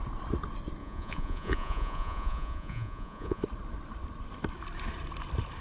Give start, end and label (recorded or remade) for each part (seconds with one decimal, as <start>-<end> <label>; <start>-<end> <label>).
0.0-0.8 recorded; 0.8-3.4 remade; 3.4-5.6 recorded